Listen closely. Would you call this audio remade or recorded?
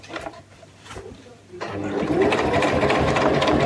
remade